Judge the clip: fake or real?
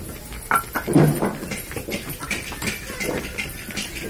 fake